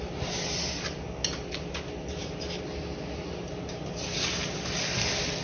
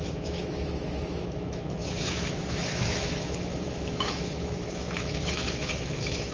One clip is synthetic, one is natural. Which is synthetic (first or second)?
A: second